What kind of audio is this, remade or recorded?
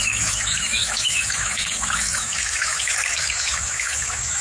remade